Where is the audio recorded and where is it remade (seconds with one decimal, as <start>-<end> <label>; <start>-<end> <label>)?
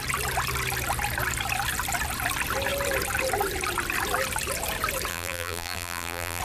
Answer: 0.0-5.1 recorded; 5.1-6.4 remade